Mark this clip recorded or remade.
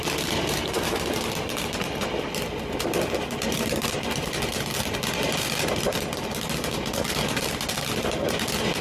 remade